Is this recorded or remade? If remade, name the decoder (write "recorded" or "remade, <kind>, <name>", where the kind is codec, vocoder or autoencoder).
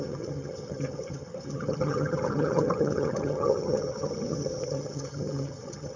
remade, vocoder, HiFi-GAN